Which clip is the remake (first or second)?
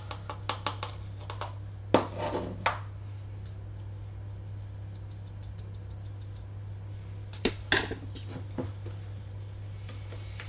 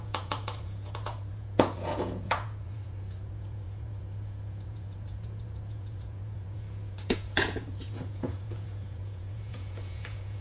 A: second